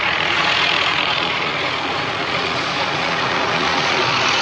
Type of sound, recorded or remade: remade